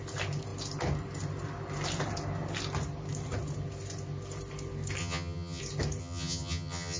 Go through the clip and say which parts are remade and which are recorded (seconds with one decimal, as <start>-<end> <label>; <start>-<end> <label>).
0.0-5.0 recorded; 5.0-5.6 remade; 5.6-6.0 recorded; 6.0-7.0 remade